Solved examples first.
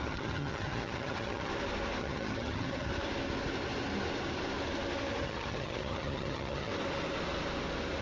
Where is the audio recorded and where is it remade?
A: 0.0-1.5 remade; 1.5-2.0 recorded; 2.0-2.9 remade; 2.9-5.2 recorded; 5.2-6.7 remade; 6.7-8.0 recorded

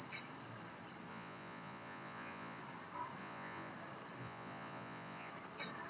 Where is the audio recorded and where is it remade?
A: 0.0-1.1 recorded; 1.1-2.6 remade; 2.6-3.2 recorded; 3.2-3.7 remade; 3.7-4.2 recorded; 4.2-5.3 remade; 5.3-5.9 recorded

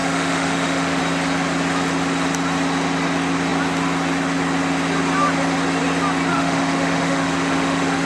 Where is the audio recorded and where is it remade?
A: 0.0-1.0 remade; 1.0-6.3 recorded; 6.3-8.1 remade

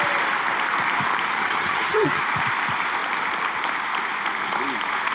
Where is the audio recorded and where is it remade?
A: 0.0-1.4 recorded; 1.4-2.2 remade; 2.2-5.1 recorded

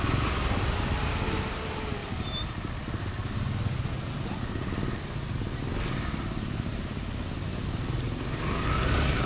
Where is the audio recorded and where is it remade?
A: 0.0-2.0 recorded; 2.0-2.7 remade; 2.7-9.3 recorded